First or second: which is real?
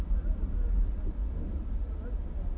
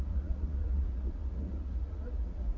first